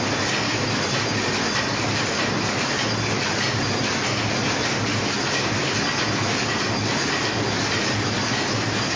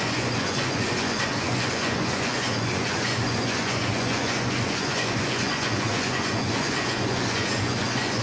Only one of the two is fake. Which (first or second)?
second